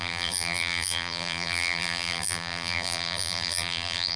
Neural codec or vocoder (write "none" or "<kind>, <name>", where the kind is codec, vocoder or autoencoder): vocoder, BigVGAN v2